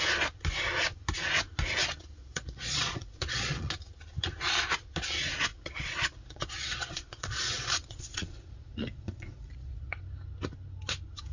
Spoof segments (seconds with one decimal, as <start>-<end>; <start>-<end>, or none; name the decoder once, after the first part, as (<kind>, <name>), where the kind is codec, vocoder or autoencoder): 2.2-3.7 (vocoder, Vocos); 5.5-10.0